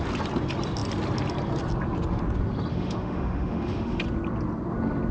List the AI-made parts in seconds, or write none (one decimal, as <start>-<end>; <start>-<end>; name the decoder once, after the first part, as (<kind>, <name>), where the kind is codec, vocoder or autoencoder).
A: 2.7-4.0 (autoencoder, DAC-VAE)